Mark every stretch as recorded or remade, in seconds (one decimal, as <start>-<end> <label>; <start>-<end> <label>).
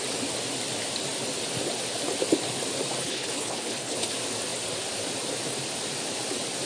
0.0-3.0 recorded; 3.0-4.1 remade; 4.1-6.7 recorded